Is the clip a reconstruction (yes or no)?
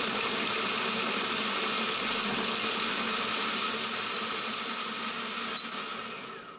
no